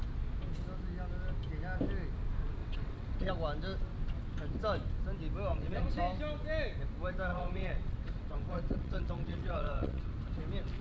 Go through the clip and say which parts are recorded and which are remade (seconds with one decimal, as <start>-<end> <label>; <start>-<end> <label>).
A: 0.0-2.6 recorded; 2.6-3.3 remade; 3.3-5.5 recorded; 5.5-6.0 remade; 6.0-7.3 recorded; 7.3-10.1 remade; 10.1-10.8 recorded